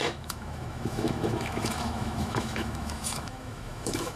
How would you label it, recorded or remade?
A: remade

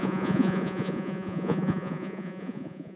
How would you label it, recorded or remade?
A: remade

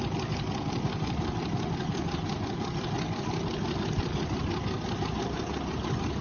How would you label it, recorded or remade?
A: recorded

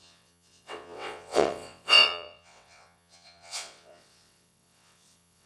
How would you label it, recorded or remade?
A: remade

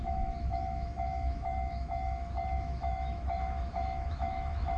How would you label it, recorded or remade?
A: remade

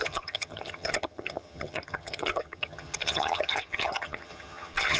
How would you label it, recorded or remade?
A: remade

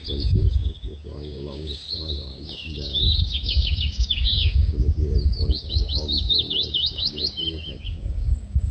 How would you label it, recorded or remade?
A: remade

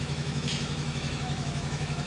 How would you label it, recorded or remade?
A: remade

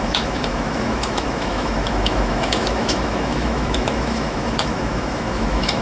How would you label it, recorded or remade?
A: remade